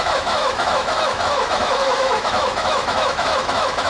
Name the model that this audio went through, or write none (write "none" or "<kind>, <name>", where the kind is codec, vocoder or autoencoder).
autoencoder, DAC-VAE